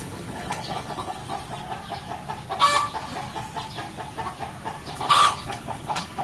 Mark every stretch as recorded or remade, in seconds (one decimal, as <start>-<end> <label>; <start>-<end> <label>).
0.0-1.2 remade; 1.2-4.9 recorded; 4.9-6.2 remade